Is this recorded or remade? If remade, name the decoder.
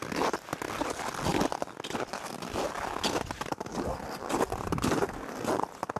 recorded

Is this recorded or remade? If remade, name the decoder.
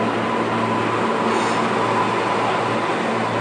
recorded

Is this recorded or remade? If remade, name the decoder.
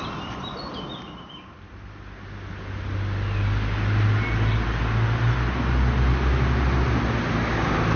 recorded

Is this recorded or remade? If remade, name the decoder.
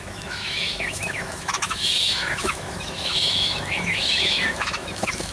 remade, autoencoder, DAC-VAE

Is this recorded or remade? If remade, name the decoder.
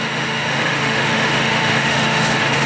remade, autoencoder, DAC-VAE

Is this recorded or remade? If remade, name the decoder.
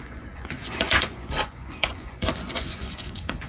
remade, vocoder, Vocos